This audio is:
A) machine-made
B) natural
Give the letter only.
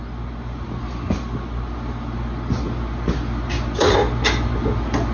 B